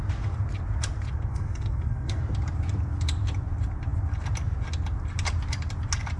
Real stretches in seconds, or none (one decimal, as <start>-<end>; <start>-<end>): 0.0-1.3; 2.2-6.2